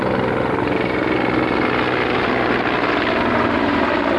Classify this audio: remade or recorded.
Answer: recorded